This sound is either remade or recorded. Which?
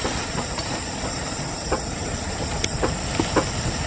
recorded